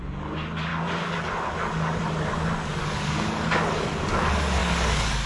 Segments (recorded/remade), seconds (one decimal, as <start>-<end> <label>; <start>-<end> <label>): 0.0-5.3 remade